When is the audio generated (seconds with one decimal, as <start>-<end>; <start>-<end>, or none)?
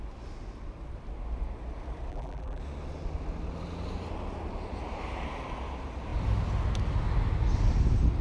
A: 2.1-2.6